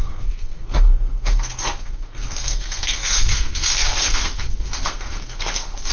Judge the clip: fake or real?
fake